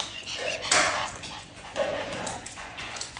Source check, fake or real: fake